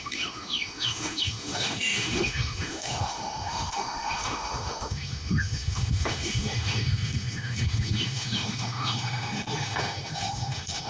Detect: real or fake fake